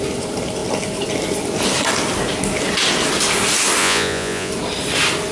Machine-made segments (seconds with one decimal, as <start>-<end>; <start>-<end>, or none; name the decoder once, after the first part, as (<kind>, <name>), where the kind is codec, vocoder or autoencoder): 3.8-4.5 (vocoder, Vocos)